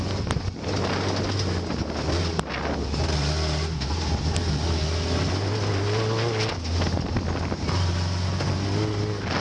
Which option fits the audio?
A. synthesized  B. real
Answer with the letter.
B